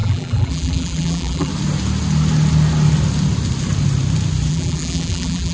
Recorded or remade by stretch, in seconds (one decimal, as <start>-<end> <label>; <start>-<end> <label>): 0.0-1.5 remade; 1.5-4.5 recorded; 4.5-5.5 remade